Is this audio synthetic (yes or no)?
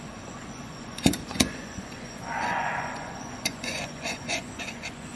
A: yes